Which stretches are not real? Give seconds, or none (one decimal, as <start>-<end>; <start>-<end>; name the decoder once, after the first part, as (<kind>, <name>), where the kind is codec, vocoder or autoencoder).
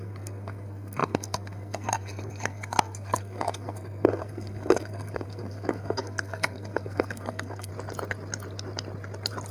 0.0-7.7 (codec, SNAC)